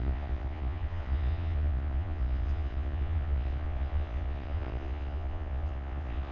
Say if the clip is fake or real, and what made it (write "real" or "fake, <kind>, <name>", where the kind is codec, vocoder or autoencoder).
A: fake, vocoder, Vocos